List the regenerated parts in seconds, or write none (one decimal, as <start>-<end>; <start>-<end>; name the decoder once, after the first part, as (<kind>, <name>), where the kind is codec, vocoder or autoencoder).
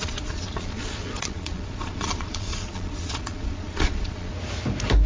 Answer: 0.0-4.3 (vocoder, Vocos)